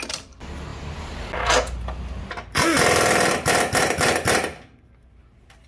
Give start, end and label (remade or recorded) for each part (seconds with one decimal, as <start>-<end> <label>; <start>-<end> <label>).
0.0-5.7 recorded